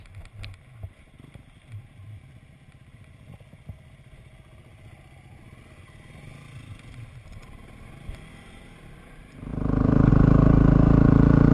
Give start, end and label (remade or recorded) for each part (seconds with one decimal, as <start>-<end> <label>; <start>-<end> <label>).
0.0-9.5 recorded; 9.5-10.1 remade; 10.1-11.5 recorded